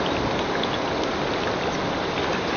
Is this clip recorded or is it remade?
recorded